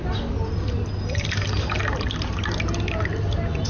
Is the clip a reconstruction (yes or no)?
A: no